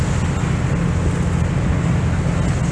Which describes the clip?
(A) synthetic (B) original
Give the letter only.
B